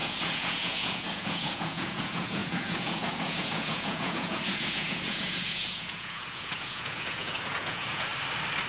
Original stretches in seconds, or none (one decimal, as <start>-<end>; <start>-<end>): 8.1-8.7